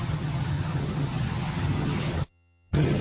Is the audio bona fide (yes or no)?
no